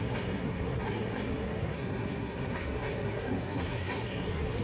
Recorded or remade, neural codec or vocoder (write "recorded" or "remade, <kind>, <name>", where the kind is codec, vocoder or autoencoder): remade, codec, SNAC